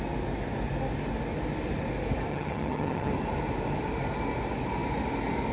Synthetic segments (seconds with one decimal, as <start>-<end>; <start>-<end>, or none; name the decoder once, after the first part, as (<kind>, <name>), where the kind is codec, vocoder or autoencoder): 2.3-3.1 (vocoder, HiFi-GAN)